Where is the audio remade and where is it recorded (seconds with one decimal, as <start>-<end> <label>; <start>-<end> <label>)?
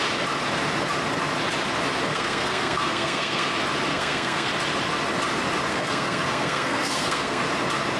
0.0-2.1 recorded; 2.1-3.5 remade; 3.5-3.9 recorded; 3.9-4.5 remade; 4.5-5.7 recorded; 5.7-7.4 remade; 7.4-8.0 recorded